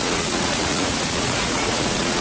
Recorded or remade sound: remade